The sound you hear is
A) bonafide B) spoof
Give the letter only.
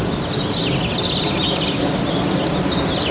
A